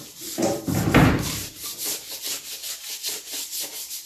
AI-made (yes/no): yes